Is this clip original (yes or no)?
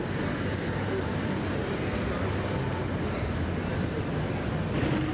yes